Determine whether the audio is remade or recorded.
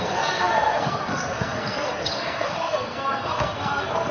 remade